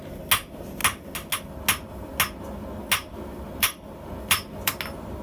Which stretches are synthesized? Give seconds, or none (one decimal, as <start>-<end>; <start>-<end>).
3.1-4.7